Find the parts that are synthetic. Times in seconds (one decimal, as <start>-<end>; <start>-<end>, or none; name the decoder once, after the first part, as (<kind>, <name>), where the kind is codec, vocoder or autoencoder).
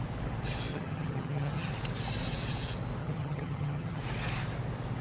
0.7-1.7 (vocoder, HiFi-GAN); 3.0-4.0